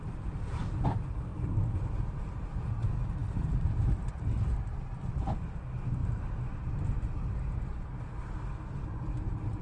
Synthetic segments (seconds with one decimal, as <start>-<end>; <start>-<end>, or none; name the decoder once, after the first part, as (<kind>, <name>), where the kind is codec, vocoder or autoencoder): 1.3-2.7 (vocoder, BigVGAN v2); 3.2-5.0; 6.0-6.7